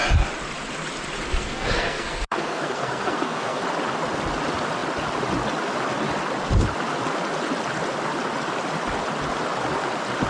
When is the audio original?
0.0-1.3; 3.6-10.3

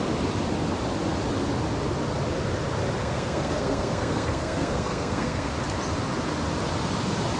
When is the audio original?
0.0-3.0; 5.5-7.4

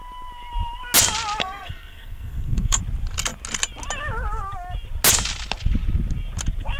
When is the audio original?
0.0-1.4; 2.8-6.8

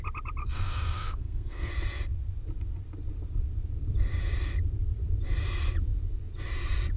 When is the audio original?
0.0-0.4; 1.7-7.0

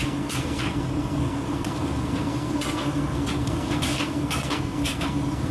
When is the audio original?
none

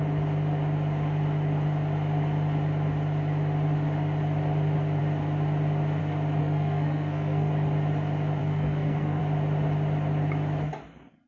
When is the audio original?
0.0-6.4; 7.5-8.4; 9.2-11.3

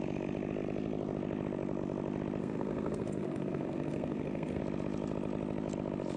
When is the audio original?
0.0-2.4; 4.6-6.2